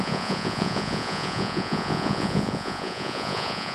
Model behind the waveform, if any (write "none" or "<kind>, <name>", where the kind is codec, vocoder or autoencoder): vocoder, Vocos